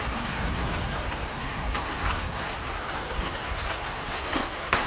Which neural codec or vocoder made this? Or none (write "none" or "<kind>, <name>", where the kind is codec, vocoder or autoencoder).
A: codec, SNAC